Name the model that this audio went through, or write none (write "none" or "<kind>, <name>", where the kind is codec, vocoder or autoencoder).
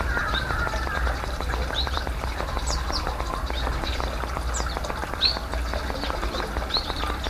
none